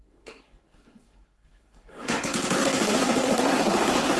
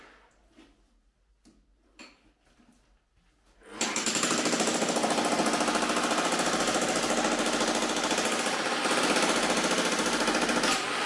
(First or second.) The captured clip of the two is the second